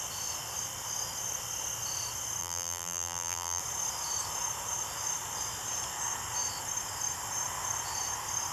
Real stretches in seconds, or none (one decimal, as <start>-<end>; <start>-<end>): 0.0-2.4; 3.6-8.5